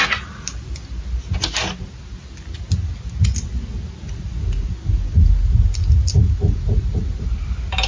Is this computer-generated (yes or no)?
no